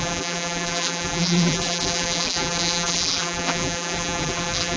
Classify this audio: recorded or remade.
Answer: remade